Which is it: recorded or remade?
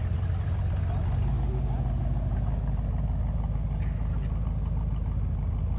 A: recorded